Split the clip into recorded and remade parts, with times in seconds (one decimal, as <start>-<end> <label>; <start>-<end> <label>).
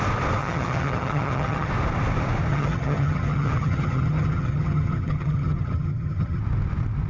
0.0-0.4 recorded; 0.4-1.7 remade; 1.7-2.5 recorded; 2.5-6.4 remade; 6.4-7.1 recorded